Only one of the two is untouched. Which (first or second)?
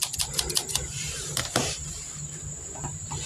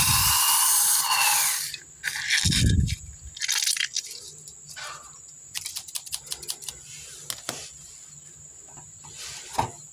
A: second